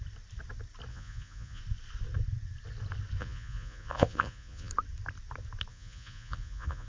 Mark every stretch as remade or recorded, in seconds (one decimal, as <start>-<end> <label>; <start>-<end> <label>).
0.0-0.9 recorded; 0.9-1.6 remade; 1.6-3.2 recorded; 3.2-4.7 remade; 4.7-5.7 recorded; 5.7-6.9 remade